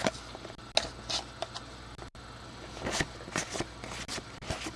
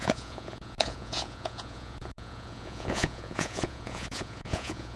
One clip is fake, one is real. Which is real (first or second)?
first